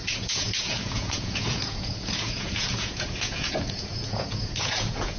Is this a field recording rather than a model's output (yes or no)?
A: no